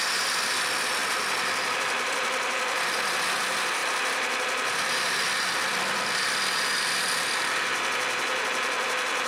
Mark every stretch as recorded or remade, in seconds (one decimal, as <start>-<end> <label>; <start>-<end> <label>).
0.0-9.3 recorded